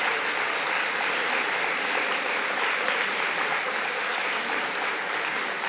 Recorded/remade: recorded